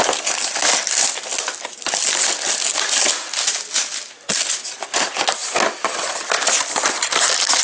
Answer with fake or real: real